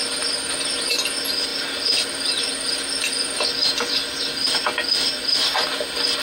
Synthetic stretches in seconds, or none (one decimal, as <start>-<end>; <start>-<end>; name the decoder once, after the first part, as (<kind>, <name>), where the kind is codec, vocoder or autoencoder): 0.0-0.5 (vocoder, BigVGAN v2)